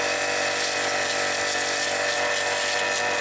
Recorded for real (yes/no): yes